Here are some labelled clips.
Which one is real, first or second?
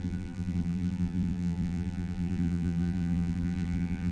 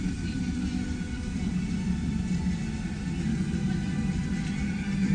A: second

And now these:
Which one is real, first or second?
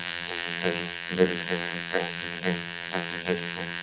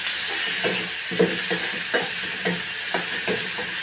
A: second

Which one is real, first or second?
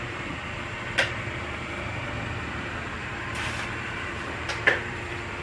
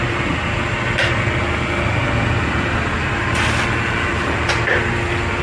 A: second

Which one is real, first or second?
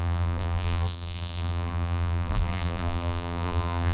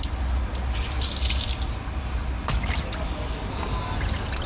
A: second